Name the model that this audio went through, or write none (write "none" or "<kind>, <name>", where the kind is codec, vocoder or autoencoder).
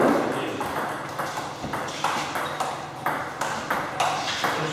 none